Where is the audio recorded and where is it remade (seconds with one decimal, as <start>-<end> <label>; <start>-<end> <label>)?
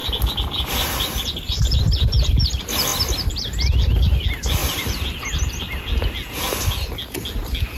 0.0-2.3 remade; 2.3-4.6 recorded; 4.6-5.8 remade; 5.8-7.8 recorded